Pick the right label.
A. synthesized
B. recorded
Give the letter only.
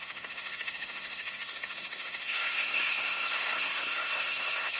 A